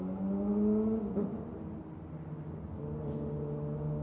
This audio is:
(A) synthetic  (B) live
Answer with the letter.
B